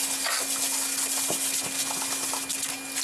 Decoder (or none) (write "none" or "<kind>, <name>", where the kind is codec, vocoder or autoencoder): none